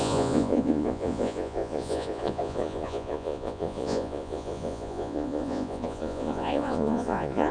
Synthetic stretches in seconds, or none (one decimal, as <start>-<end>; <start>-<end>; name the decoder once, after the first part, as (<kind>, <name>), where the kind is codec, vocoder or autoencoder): 0.0-7.5 (vocoder, Vocos)